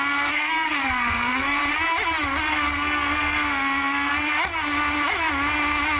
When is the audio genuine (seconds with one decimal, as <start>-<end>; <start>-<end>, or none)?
1.6-2.5; 4.1-6.0